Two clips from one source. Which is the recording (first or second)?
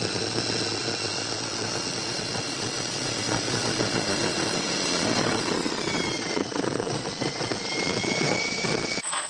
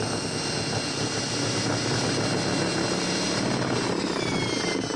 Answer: second